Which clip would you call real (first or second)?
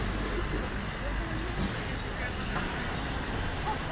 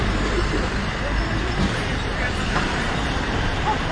first